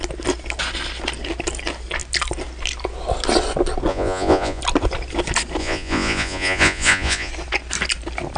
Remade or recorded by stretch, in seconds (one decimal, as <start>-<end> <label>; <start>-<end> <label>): 0.0-3.9 recorded; 3.9-4.6 remade; 4.6-5.6 recorded; 5.6-7.3 remade; 7.3-8.4 recorded